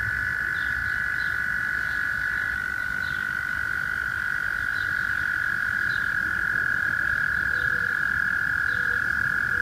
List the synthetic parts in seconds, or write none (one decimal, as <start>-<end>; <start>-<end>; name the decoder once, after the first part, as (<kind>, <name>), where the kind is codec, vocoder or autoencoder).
4.7-5.9 (vocoder, BigVGAN v2)